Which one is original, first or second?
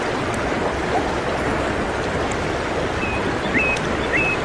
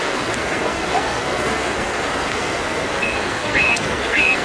first